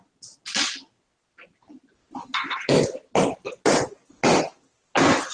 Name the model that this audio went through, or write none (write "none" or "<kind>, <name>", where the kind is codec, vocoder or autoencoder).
none